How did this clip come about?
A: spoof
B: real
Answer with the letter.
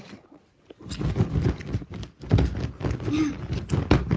B